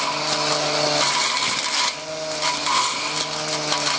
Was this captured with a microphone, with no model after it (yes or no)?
yes